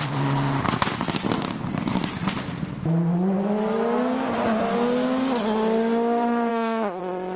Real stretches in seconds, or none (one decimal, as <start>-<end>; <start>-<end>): 0.0-6.5; 7.0-7.4